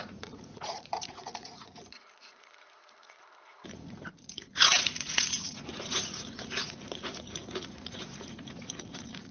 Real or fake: fake